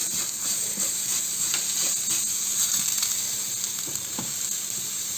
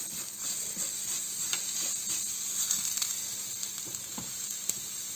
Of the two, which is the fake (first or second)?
first